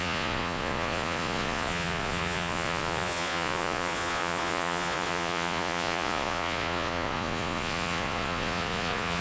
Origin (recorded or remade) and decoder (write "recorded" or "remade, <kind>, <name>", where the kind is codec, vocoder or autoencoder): remade, vocoder, Vocos